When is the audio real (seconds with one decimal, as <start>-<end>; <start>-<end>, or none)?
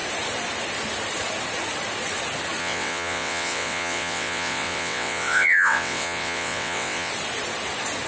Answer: 0.0-2.6; 7.1-8.1